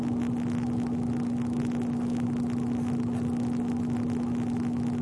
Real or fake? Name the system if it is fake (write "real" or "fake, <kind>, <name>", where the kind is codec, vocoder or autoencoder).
real